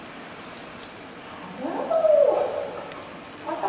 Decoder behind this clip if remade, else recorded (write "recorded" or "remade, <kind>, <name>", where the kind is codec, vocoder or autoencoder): recorded